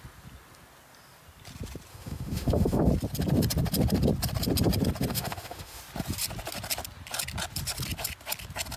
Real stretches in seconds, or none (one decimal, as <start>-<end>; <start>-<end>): 0.0-1.9; 2.9-5.1; 5.8-8.8